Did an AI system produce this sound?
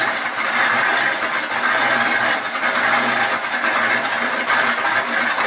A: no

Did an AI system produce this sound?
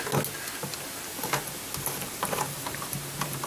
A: no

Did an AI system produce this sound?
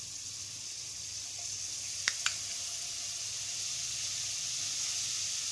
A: no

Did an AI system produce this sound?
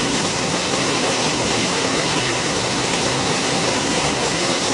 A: yes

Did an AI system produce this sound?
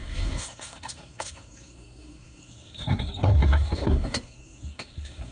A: yes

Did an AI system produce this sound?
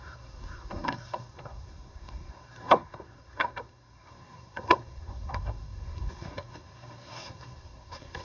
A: yes